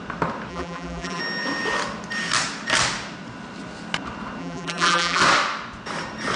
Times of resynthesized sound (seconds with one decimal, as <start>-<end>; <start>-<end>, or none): 0.5-1.2; 4.4-5.2